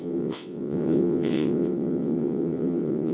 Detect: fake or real fake